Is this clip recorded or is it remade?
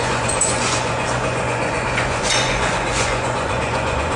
remade